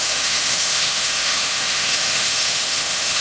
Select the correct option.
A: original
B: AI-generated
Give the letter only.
B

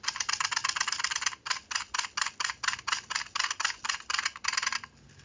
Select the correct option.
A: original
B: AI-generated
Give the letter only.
A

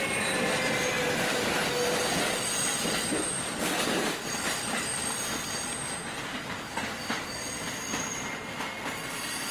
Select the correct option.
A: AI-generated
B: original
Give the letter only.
B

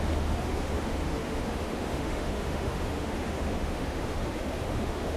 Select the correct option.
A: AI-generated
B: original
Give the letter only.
A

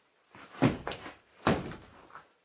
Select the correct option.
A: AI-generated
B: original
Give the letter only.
B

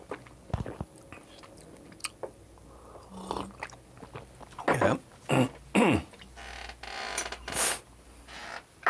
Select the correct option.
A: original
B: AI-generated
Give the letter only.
A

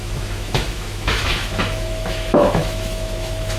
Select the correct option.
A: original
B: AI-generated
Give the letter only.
B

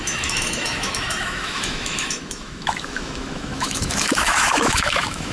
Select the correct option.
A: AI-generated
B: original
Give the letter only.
A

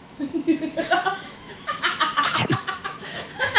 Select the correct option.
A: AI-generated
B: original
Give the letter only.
A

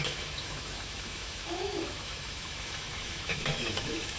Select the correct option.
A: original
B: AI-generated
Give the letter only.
B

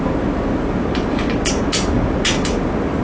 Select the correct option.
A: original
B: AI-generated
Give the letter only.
A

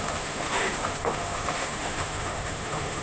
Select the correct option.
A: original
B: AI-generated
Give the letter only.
B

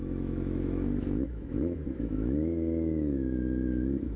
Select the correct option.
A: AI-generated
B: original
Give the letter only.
A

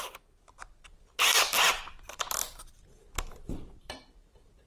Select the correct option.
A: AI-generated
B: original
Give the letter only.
B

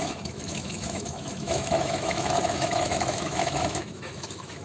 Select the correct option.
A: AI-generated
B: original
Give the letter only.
A